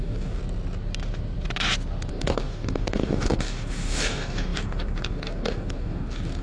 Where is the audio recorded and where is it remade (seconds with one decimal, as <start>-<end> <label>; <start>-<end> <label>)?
0.0-0.4 remade; 0.4-2.1 recorded; 2.1-6.4 remade